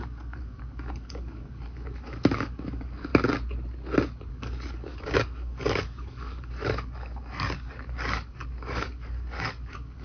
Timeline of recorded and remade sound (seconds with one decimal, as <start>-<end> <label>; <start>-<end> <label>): 0.0-3.1 remade; 3.1-4.3 recorded; 4.3-10.0 remade